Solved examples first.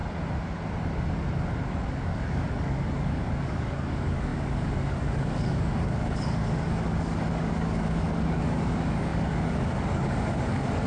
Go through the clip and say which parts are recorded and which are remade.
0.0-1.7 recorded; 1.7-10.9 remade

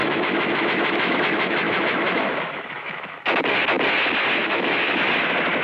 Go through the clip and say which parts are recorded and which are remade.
0.0-3.4 remade; 3.4-4.4 recorded; 4.4-5.1 remade; 5.1-5.6 recorded

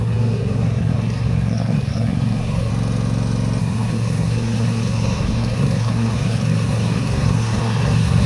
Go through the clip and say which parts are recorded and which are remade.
0.0-2.7 remade; 2.7-3.6 recorded; 3.6-8.3 remade

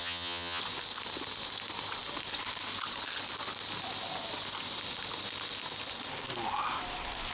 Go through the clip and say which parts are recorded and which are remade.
0.0-0.6 remade; 0.6-7.3 recorded

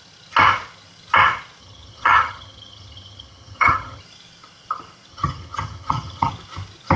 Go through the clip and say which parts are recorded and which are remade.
0.0-1.6 recorded; 1.6-4.0 remade; 4.0-5.1 recorded; 5.1-6.3 remade; 6.3-7.0 recorded

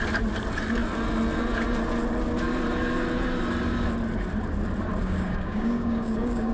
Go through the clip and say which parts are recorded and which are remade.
0.0-5.0 recorded; 5.0-6.5 remade